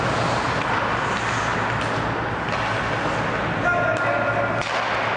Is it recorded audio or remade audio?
recorded